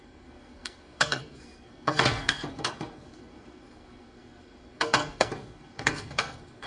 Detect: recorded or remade remade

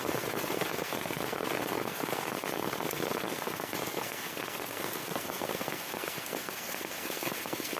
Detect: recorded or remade remade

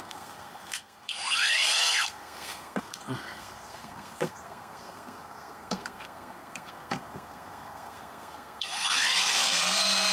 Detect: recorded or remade remade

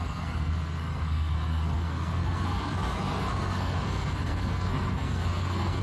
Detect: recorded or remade remade